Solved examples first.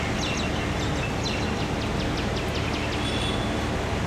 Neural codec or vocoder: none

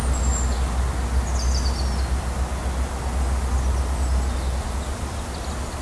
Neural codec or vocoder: none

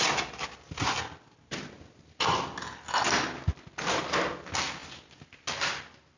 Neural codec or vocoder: none